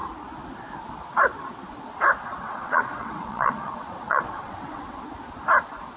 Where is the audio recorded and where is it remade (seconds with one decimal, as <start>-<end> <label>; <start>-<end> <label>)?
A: 0.0-2.3 recorded; 2.3-5.0 remade; 5.0-6.0 recorded